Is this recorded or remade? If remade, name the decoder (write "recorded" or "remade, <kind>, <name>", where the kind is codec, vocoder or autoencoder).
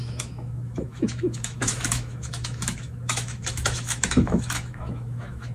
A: remade, autoencoder, DAC-VAE